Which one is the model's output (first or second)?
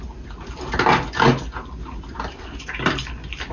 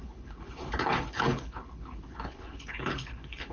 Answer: second